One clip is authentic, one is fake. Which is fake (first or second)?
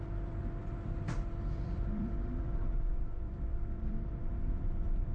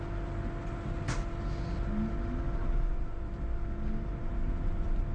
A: first